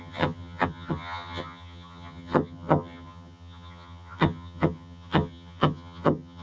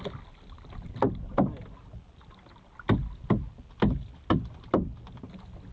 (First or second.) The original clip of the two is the second